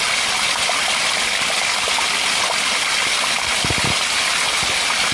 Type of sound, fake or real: real